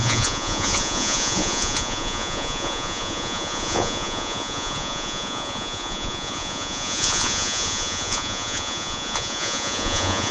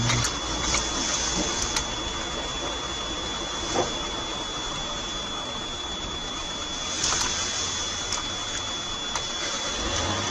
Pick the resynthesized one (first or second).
first